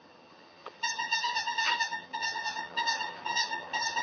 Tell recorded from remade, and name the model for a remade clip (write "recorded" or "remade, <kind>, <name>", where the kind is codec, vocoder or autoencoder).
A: remade, vocoder, HiFi-GAN